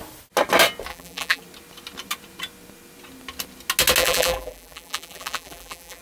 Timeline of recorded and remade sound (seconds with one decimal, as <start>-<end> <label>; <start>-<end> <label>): 0.0-0.9 recorded; 0.9-1.4 remade; 1.4-4.0 recorded; 4.0-6.0 remade